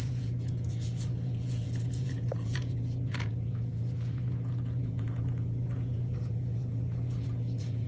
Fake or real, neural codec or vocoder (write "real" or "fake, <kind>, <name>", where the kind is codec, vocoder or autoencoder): fake, vocoder, Vocos